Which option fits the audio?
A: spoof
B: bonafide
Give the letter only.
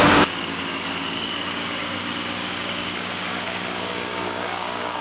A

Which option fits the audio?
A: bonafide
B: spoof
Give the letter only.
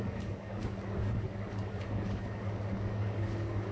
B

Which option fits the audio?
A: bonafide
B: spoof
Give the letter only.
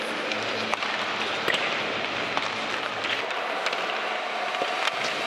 A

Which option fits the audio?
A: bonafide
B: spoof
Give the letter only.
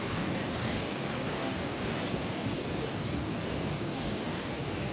B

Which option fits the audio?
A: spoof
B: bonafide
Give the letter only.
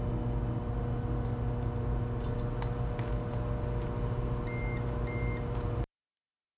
B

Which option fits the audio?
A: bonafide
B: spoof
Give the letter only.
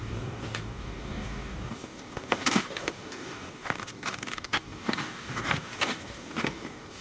B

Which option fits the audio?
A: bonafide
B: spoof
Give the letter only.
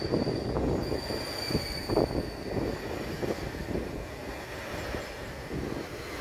A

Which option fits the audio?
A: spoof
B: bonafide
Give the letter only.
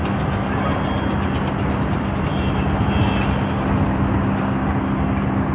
B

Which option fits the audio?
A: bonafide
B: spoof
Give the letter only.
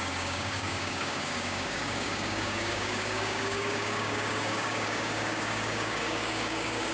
B